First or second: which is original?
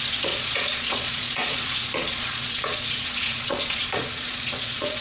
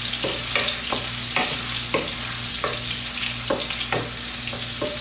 second